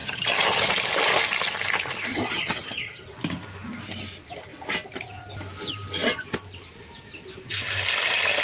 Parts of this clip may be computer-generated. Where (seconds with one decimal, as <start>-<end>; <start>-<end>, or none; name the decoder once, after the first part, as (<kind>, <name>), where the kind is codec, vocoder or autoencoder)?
0.0-0.7 (vocoder, HiFi-GAN); 2.1-3.0

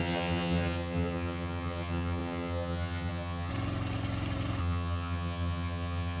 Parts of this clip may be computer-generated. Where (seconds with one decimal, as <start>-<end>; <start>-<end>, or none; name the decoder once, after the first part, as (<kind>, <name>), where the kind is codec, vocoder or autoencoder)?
0.0-3.5 (vocoder, HiFi-GAN); 4.6-6.2

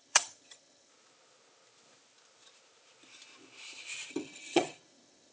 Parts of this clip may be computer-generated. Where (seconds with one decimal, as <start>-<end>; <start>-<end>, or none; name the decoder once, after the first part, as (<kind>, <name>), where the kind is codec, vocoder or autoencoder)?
0.0-0.9 (vocoder, HiFi-GAN); 4.1-5.3

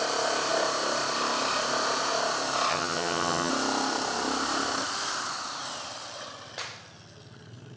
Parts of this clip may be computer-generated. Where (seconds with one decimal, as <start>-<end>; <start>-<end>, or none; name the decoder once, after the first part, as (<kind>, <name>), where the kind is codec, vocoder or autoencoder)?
2.7-3.5 (vocoder, HiFi-GAN)

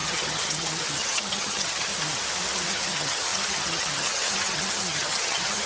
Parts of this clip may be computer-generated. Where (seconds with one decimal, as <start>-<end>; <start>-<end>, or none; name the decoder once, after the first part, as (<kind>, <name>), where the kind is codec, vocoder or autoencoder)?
0.0-1.9 (vocoder, HiFi-GAN); 2.7-5.7

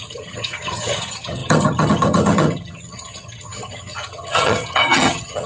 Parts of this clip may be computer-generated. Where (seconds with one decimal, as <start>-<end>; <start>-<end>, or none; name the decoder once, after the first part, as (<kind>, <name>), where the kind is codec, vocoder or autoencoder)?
0.0-5.5 (vocoder, HiFi-GAN)